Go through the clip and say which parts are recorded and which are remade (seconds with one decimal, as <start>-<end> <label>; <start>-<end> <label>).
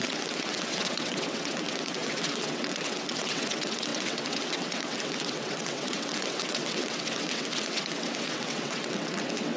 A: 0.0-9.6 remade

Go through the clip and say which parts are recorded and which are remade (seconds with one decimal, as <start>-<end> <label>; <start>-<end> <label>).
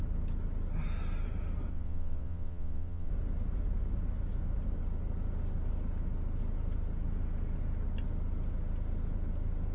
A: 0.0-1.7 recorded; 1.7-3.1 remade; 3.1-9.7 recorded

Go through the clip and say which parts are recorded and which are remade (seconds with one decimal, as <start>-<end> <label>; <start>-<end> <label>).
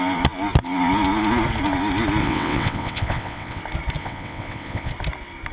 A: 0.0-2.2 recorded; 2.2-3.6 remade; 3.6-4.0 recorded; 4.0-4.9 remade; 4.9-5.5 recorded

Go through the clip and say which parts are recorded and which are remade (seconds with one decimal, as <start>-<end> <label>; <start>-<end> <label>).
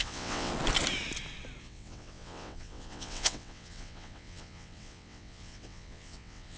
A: 0.0-0.5 remade; 0.5-1.6 recorded; 1.6-6.6 remade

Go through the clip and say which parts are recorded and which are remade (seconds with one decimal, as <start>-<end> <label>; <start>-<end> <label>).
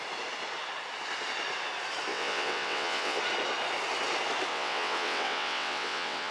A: 0.0-2.1 recorded; 2.1-3.2 remade; 3.2-4.5 recorded; 4.5-6.3 remade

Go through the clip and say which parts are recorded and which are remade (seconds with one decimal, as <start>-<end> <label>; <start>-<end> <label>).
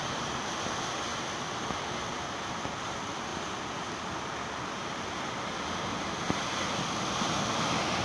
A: 0.0-8.0 recorded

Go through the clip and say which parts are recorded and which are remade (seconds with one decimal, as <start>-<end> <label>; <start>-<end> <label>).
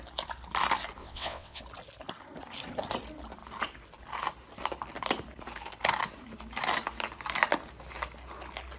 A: 0.0-1.0 recorded; 1.0-1.6 remade; 1.6-8.8 recorded